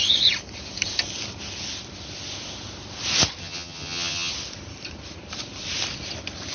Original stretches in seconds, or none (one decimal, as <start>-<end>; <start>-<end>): 0.0-3.4; 4.3-6.5